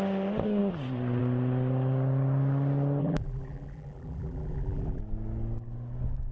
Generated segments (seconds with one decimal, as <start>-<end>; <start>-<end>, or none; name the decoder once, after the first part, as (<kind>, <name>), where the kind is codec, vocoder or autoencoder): 3.0-5.0 (vocoder, BigVGAN v2)